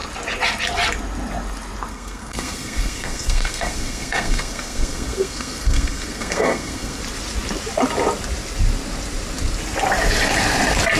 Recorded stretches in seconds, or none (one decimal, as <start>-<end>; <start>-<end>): 0.0-1.9; 7.0-11.0